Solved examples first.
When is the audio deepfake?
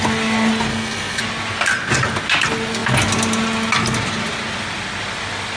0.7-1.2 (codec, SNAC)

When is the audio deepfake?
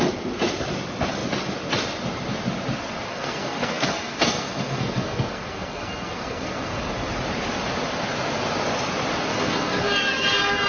3.1-6.8 (codec, SNAC); 9.3-10.7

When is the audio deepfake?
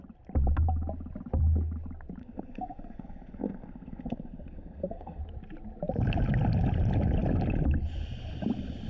2.2-5.2 (codec, SNAC)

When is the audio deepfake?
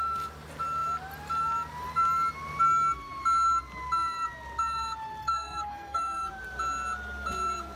5.2-6.3 (codec, SNAC)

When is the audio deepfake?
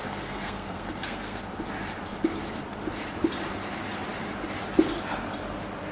0.0-1.4 (codec, SNAC)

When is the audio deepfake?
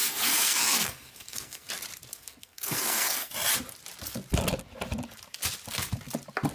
0.0-1.7 (codec, SNAC); 2.1-3.3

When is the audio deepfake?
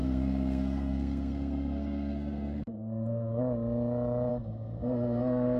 0.0-3.4 (codec, SNAC); 4.3-5.6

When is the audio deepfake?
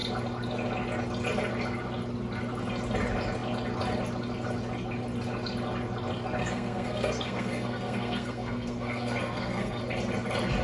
6.4-9.8 (codec, SNAC)